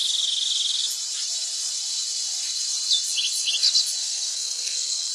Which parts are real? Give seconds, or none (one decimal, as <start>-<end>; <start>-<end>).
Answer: 0.0-4.0